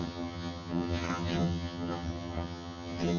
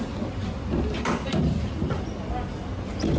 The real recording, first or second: second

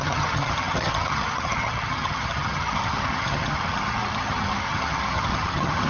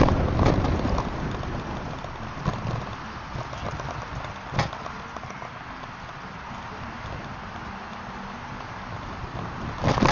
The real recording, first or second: second